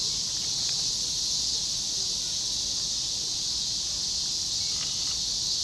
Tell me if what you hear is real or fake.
real